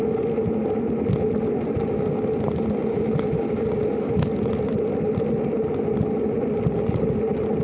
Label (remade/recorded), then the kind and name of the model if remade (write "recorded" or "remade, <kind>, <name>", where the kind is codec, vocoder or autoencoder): recorded